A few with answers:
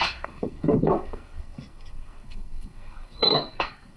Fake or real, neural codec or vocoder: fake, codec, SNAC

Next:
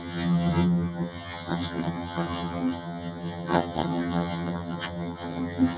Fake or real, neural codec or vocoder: fake, vocoder, HiFi-GAN